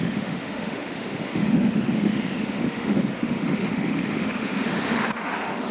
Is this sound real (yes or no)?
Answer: no